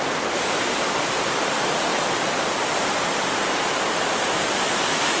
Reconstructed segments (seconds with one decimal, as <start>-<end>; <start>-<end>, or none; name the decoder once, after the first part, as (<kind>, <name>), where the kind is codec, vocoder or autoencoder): none